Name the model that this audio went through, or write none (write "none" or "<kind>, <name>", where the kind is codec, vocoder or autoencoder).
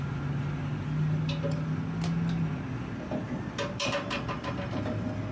none